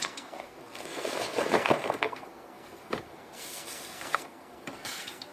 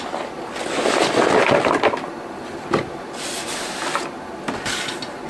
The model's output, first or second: first